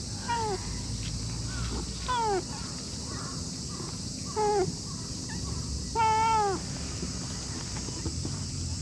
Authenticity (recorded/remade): recorded